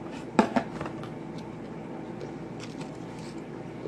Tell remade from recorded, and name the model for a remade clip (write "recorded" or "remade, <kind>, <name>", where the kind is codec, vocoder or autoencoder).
remade, vocoder, BigVGAN v2